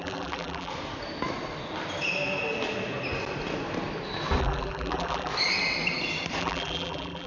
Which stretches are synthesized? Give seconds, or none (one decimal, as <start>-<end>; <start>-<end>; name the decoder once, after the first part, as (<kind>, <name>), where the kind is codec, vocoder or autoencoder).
0.0-0.7 (vocoder, BigVGAN v2); 4.4-5.3; 6.4-7.3